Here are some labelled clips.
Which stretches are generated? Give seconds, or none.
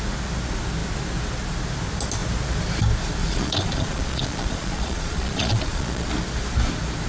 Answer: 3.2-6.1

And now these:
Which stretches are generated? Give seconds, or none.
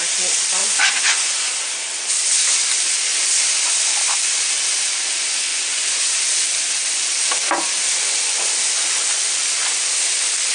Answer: 0.6-1.4; 5.5-6.2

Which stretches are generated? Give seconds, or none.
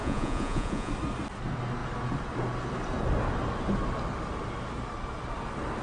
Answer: 0.0-0.9